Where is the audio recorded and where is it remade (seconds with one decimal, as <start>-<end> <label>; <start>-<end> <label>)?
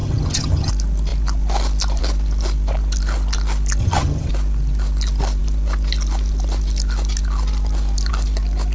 0.0-0.7 remade; 0.7-3.8 recorded; 3.8-4.3 remade; 4.3-8.7 recorded